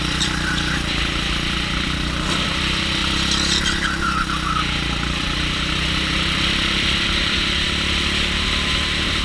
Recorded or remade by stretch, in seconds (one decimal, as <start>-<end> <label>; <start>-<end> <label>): 0.0-3.0 remade; 3.0-5.0 recorded; 5.0-9.2 remade